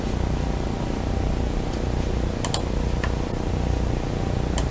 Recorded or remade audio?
recorded